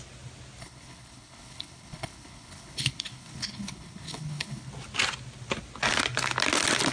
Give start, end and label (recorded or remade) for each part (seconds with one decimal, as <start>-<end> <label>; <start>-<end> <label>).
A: 0.0-0.6 recorded; 0.6-4.7 remade; 4.7-6.9 recorded